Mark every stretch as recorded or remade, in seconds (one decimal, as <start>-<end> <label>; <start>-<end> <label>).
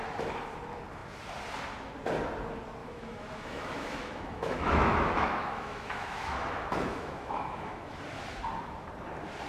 0.0-2.8 recorded; 2.8-8.0 remade; 8.0-9.5 recorded